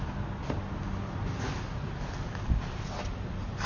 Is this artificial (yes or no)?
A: no